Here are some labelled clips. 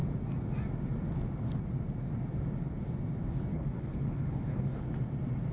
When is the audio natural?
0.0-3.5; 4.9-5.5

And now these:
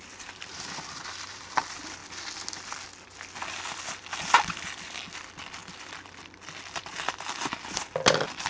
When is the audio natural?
2.0-3.6; 5.6-6.4

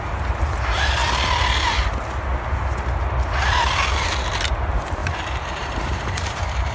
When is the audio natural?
1.0-4.5

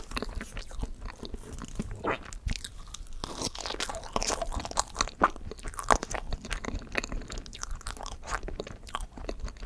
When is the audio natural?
0.0-9.7

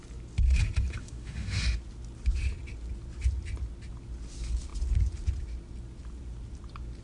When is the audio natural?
0.0-1.0; 1.6-7.0

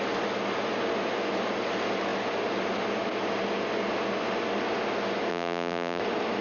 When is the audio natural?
0.0-5.3; 6.0-6.4